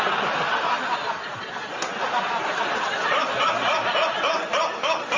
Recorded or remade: recorded